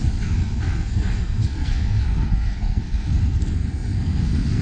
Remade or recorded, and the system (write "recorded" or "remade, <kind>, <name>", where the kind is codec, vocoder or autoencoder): remade, codec, SNAC